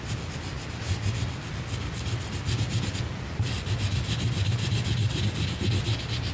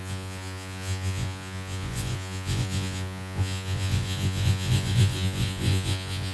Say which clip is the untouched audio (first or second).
first